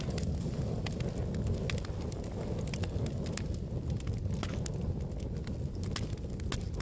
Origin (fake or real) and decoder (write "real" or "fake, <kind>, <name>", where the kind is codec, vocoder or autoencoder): real